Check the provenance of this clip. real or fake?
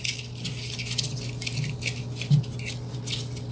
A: real